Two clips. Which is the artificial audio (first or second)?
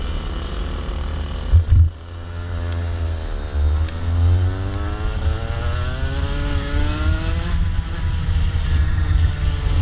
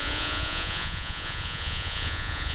second